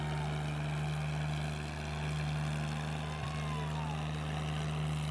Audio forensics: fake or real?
real